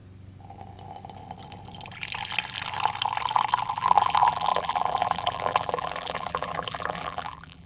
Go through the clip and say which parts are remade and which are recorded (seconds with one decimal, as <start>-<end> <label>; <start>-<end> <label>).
0.0-3.7 recorded; 3.7-7.7 remade